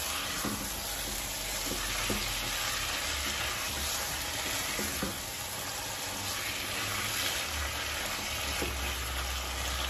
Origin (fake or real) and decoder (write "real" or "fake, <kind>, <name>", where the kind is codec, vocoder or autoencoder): real